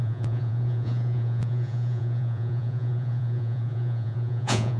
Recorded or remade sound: remade